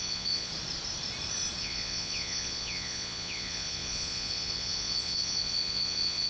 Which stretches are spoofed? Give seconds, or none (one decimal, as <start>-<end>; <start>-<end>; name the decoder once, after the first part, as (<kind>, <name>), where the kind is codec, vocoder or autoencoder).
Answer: 0.0-0.5 (vocoder, Vocos); 1.6-6.3